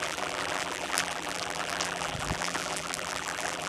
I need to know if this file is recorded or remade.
remade